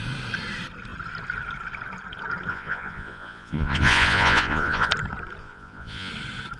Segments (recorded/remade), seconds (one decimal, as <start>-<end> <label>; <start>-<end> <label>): 0.0-2.5 recorded; 2.5-4.9 remade; 4.9-5.4 recorded; 5.4-6.1 remade; 6.1-6.6 recorded